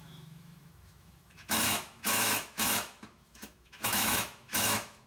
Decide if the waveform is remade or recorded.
remade